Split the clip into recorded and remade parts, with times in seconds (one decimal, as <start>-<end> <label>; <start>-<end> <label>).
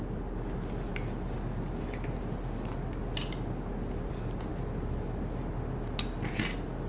0.0-6.9 recorded